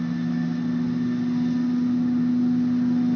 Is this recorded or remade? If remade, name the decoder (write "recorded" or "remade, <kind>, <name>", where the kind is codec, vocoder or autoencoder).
recorded